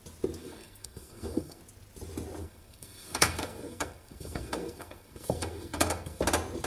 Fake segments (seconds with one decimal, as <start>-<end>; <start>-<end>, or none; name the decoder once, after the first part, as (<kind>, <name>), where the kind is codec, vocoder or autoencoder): 0.4-1.6 (codec, SNAC); 2.4-6.2